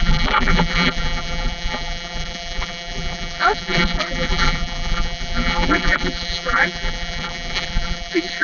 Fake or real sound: fake